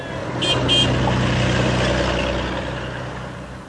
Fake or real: real